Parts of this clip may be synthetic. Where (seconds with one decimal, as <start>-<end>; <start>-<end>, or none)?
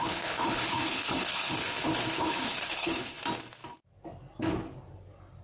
0.0-3.2